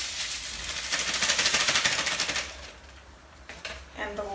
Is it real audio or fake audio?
real